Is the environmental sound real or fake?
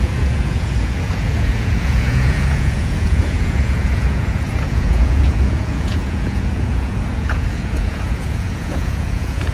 fake